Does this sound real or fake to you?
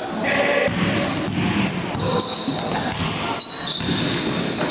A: real